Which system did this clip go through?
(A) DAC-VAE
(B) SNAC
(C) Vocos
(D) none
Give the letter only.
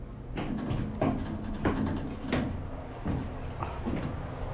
D